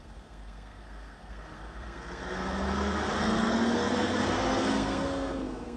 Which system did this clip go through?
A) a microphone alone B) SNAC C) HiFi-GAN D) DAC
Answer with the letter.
B